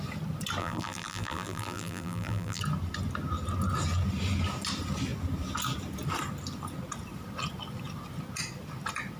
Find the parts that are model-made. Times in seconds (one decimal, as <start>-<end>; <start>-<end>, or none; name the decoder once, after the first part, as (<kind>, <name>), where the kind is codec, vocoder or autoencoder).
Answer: 0.6-2.6 (vocoder, BigVGAN v2)

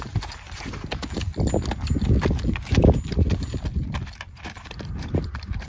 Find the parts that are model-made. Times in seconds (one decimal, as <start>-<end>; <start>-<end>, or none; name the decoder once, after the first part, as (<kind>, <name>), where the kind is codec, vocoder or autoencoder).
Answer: 0.0-1.3 (vocoder, BigVGAN v2); 4.7-5.7

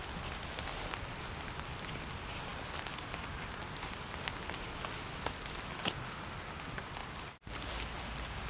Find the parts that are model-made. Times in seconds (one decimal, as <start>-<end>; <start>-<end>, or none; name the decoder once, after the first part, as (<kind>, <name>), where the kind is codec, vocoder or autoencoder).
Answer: 7.0-7.7 (vocoder, BigVGAN v2)

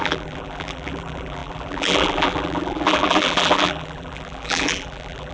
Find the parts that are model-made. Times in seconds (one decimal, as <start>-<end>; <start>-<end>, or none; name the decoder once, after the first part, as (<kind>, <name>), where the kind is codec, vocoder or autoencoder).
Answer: 0.0-5.3 (vocoder, BigVGAN v2)

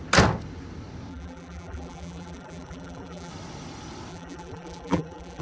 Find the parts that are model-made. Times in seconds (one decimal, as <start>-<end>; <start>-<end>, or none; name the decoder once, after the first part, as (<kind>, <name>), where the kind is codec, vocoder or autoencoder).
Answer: 1.1-3.3 (vocoder, BigVGAN v2); 4.1-5.4